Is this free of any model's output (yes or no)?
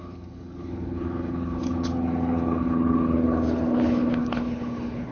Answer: no